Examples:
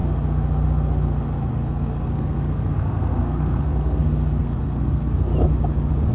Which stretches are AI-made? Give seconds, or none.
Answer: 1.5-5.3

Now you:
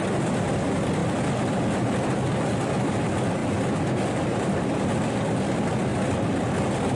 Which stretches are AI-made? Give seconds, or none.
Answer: none

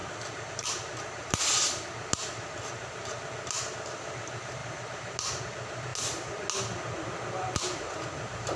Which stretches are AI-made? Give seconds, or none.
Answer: none

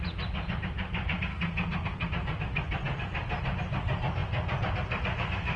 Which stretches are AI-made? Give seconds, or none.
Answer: 1.3-2.1

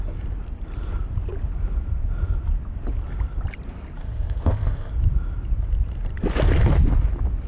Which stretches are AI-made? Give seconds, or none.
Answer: 4.0-4.9

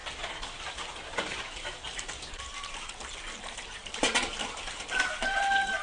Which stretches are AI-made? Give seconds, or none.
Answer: 1.9-5.8

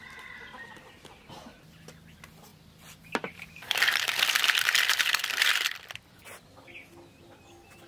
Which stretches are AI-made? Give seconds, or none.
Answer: 2.5-6.4

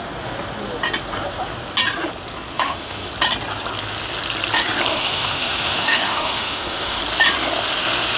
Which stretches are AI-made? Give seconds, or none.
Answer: 2.5-3.1; 4.9-7.0